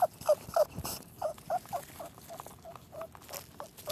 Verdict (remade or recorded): recorded